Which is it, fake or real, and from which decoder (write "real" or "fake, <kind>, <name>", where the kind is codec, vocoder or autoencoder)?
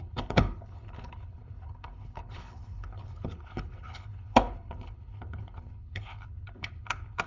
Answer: fake, codec, HILCodec